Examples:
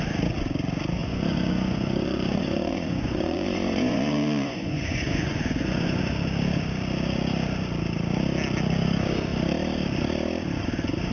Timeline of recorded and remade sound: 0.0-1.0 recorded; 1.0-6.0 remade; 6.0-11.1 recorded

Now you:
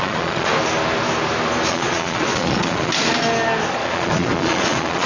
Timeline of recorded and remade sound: 0.0-0.5 remade; 0.5-1.7 recorded; 1.7-2.9 remade; 2.9-3.7 recorded; 3.7-5.1 remade

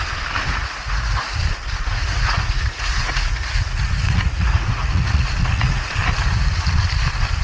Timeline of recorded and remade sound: 0.0-0.5 recorded; 0.5-1.4 remade; 1.4-1.9 recorded; 1.9-5.9 remade; 5.9-7.4 recorded